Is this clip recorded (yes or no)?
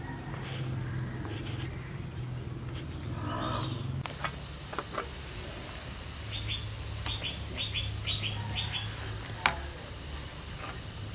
yes